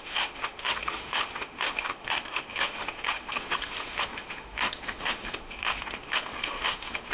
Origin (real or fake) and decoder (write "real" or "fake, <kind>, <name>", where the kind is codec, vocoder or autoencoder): fake, autoencoder, DAC-VAE